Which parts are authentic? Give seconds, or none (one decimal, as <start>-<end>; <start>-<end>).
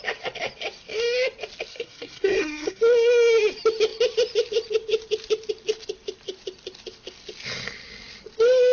0.0-1.7; 2.8-8.7